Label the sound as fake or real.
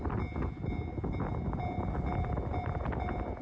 real